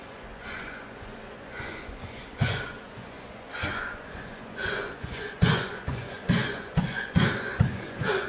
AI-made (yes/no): yes